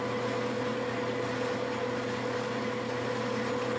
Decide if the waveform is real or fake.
real